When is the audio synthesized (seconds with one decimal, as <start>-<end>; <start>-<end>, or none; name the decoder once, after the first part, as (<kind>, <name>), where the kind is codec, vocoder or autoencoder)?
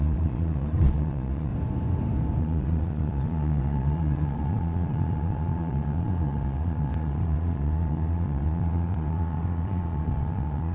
0.0-1.5 (vocoder, Vocos); 2.4-10.7